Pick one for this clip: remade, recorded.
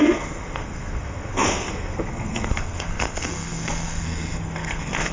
remade